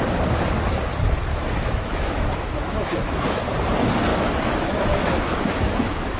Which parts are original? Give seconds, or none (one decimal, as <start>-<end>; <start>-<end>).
0.0-1.3; 3.4-4.1